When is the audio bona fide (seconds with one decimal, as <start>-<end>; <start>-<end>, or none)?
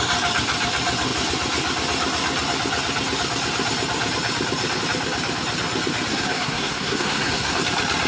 0.0-6.1; 7.6-8.1